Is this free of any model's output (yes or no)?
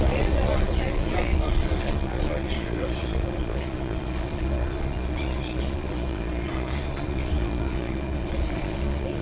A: no